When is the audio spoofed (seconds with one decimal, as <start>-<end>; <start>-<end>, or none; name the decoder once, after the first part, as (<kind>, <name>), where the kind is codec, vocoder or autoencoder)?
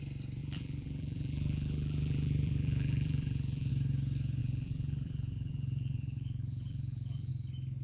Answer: 0.4-3.7 (vocoder, BigVGAN v2); 4.4-7.3